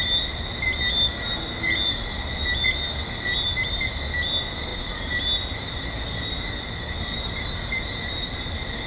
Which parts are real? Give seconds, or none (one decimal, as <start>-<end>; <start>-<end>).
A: 0.0-8.9